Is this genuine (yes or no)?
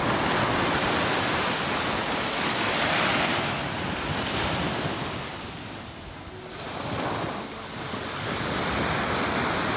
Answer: yes